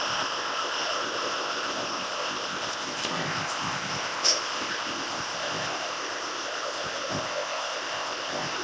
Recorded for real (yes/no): no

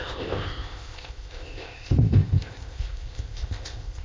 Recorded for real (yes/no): no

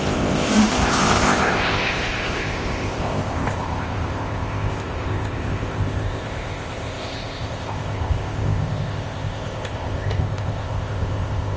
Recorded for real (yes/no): no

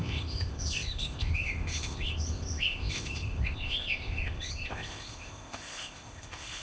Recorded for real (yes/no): no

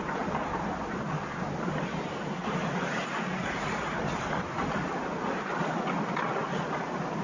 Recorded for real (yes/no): yes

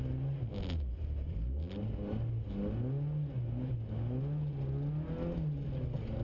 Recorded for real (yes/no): yes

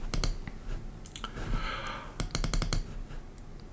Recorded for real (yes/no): yes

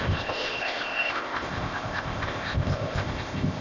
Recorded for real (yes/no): no